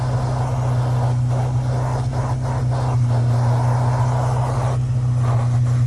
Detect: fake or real real